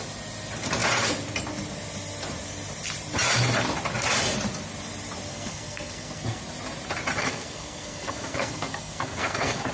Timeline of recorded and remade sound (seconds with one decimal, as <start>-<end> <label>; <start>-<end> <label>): 0.0-5.3 recorded; 5.3-6.4 remade; 6.4-7.2 recorded; 7.2-9.7 remade